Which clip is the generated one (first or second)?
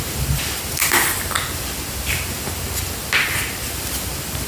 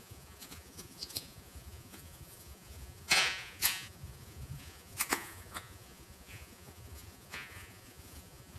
second